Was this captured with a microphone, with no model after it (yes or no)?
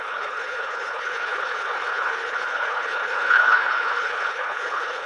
no